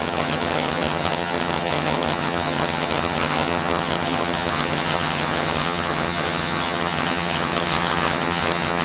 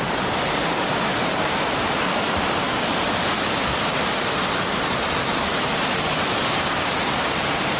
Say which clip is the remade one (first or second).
first